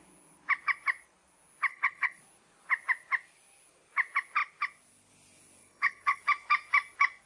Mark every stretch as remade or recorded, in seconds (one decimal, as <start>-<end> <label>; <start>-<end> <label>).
0.0-1.7 recorded; 1.7-2.2 remade; 2.2-5.6 recorded; 5.6-6.2 remade; 6.2-7.3 recorded